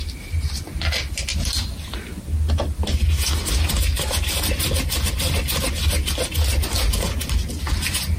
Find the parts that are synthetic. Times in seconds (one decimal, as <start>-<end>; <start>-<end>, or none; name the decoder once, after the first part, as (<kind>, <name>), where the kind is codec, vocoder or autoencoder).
1.3-2.2 (vocoder, BigVGAN v2)